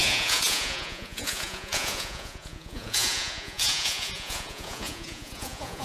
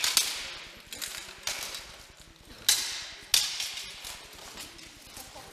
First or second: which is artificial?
first